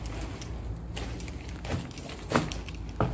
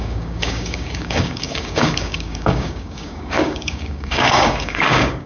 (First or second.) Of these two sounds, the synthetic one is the second